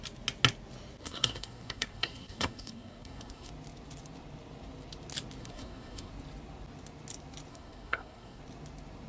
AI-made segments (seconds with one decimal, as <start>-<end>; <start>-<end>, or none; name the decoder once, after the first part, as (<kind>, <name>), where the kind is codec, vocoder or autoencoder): 1.0-3.5 (codec, SNAC); 5.4-6.1; 7.5-8.4